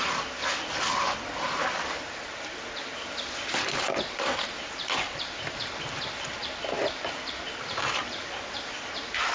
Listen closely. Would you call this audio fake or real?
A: real